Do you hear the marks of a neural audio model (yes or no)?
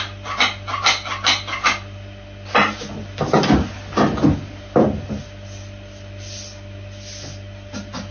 no